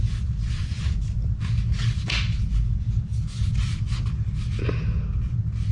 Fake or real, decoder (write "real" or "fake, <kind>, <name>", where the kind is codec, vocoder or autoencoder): real